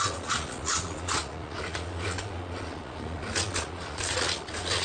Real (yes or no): no